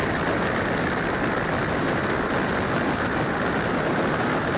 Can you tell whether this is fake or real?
real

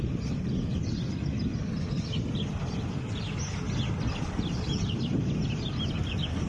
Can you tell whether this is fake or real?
real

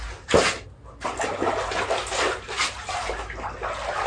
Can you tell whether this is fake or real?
real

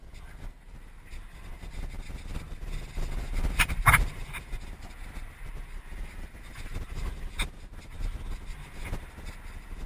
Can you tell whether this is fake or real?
real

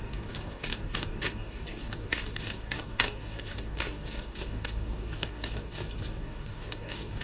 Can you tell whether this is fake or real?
fake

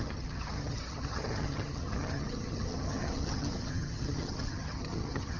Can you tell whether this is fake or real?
fake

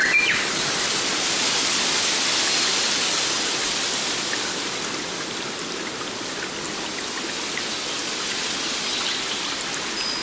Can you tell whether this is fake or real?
real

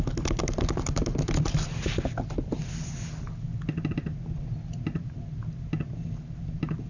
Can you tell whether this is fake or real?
real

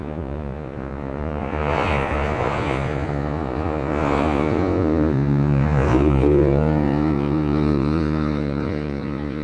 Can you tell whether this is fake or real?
fake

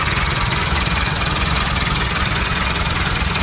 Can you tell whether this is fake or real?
fake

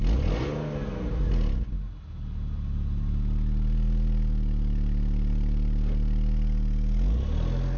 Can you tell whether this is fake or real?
real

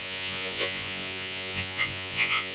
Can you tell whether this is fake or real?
fake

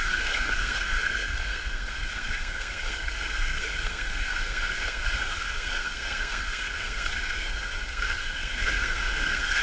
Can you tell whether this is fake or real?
fake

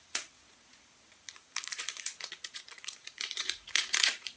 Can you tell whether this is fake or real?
fake